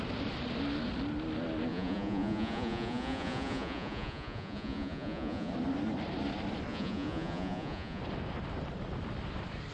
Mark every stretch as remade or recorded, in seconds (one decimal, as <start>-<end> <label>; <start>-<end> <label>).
0.0-1.7 recorded; 1.7-5.5 remade; 5.5-6.7 recorded; 6.7-8.0 remade; 8.0-9.7 recorded